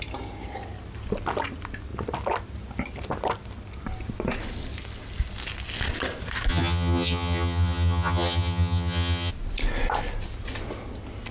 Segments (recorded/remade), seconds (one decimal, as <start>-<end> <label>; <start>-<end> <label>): 0.0-6.5 recorded; 6.5-9.3 remade; 9.3-11.3 recorded